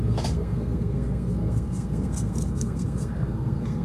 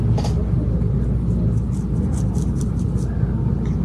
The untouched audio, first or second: second